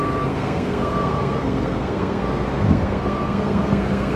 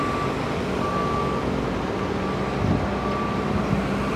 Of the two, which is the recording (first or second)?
second